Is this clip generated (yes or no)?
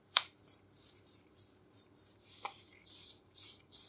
yes